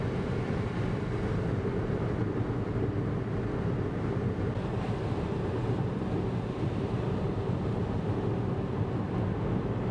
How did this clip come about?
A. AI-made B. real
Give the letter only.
B